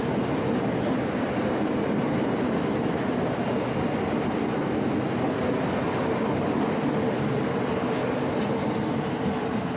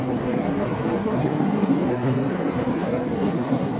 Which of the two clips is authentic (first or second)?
first